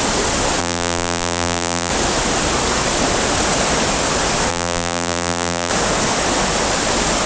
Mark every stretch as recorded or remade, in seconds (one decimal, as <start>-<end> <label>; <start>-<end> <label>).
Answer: 0.0-0.6 recorded; 0.6-1.9 remade; 1.9-4.5 recorded; 4.5-5.7 remade; 5.7-7.3 recorded